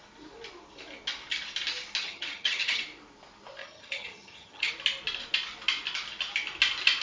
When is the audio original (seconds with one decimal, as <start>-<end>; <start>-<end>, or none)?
0.0-2.0; 2.8-3.6; 4.7-7.0